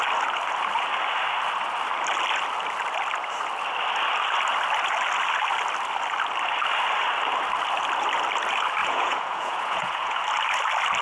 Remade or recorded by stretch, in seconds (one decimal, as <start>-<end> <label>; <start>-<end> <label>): 0.0-8.8 recorded; 8.8-10.2 remade; 10.2-11.0 recorded

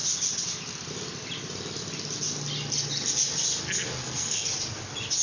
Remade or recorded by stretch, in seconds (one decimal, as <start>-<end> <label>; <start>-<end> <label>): 0.0-4.0 recorded; 4.0-4.5 remade; 4.5-5.2 recorded

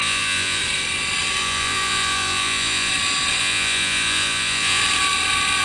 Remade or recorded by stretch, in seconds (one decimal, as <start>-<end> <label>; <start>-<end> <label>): 0.0-0.6 remade; 0.6-1.4 recorded; 1.4-2.9 remade; 2.9-3.4 recorded; 3.4-4.8 remade; 4.8-5.6 recorded

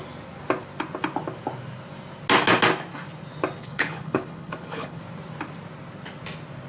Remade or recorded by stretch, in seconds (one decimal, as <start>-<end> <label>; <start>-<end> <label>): 0.0-3.6 recorded; 3.6-5.0 remade; 5.0-6.7 recorded